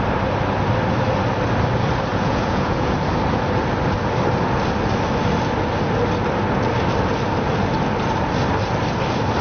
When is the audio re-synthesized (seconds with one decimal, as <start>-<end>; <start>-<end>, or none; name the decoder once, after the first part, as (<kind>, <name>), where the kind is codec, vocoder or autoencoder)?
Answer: 2.1-2.9 (vocoder, Vocos)